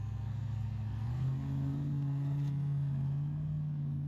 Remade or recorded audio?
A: remade